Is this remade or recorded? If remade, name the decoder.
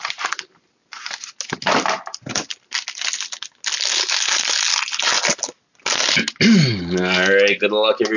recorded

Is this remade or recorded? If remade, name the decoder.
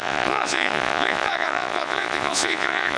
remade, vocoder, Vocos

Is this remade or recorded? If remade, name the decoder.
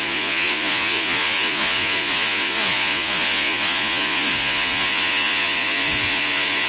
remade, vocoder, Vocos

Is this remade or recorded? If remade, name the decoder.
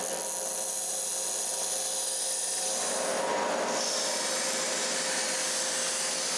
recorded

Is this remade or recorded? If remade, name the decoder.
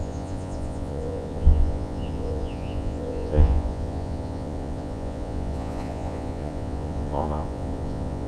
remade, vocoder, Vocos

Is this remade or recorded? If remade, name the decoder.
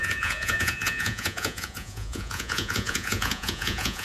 remade, vocoder, Vocos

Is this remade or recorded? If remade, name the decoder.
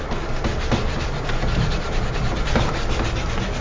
recorded